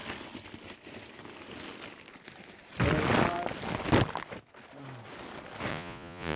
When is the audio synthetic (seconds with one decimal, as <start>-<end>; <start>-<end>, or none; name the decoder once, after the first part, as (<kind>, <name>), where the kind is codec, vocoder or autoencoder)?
5.7-6.4 (vocoder, Vocos)